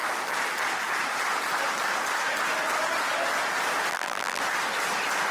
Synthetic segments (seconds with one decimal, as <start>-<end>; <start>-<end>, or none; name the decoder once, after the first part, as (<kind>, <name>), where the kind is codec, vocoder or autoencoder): 3.9-4.4 (vocoder, BigVGAN v2)